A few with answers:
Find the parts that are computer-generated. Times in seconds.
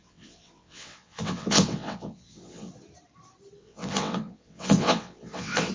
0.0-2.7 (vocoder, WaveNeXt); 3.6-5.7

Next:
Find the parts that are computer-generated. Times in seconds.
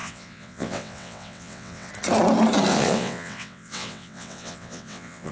0.0-1.9 (vocoder, WaveNeXt); 2.7-5.3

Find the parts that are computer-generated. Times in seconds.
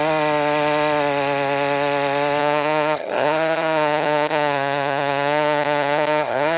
2.4-6.6 (vocoder, HiFi-GAN)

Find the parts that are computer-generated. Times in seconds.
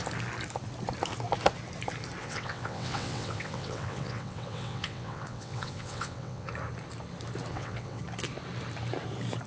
2.2-6.5 (vocoder, WaveNeXt); 7.5-8.0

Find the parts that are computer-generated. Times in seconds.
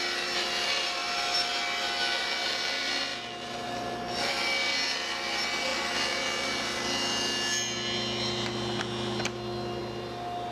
3.1-4.3 (vocoder, BigVGAN v2)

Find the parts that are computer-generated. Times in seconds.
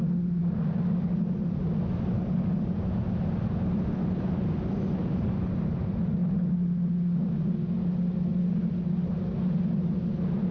none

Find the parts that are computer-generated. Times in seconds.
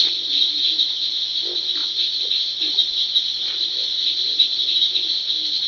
1.8-2.7 (vocoder, Vocos)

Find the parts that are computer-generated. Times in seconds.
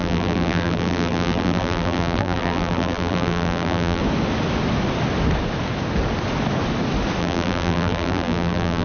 0.0-4.0 (vocoder, BigVGAN v2); 7.2-8.8